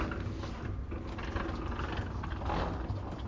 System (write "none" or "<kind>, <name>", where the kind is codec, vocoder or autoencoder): none